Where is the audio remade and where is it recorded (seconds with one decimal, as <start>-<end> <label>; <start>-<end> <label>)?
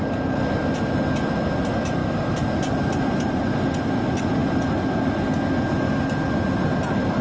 0.0-2.0 recorded; 2.0-3.4 remade; 3.4-7.2 recorded